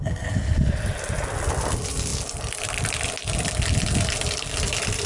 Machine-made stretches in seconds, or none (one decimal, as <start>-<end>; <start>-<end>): none